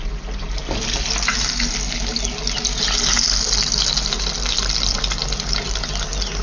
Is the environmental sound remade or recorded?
recorded